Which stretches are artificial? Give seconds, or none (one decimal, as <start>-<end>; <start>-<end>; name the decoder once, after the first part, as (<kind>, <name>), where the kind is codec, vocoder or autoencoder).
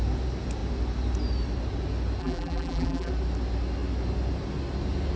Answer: 2.2-3.1 (vocoder, BigVGAN v2)